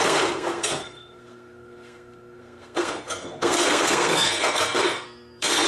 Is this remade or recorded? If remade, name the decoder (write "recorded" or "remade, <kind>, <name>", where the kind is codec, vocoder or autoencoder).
remade, codec, SNAC